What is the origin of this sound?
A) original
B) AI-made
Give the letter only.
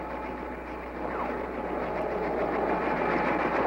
A